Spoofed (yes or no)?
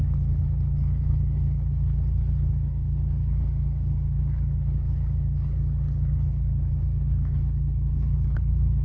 yes